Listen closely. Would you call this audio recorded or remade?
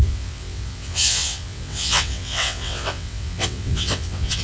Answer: remade